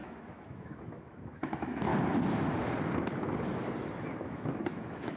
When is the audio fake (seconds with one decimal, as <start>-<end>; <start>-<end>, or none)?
0.0-1.9; 4.2-5.2